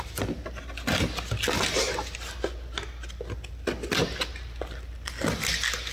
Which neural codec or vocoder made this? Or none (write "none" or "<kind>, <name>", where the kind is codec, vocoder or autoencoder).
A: none